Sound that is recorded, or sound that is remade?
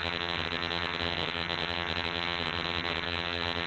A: remade